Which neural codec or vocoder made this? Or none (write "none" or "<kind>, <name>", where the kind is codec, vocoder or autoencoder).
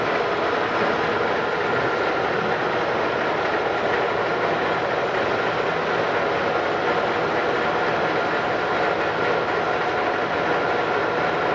none